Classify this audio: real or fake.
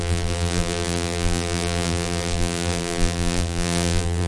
fake